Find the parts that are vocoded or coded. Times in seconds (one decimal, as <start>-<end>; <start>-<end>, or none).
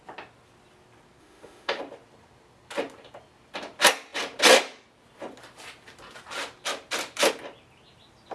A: 1.2-1.8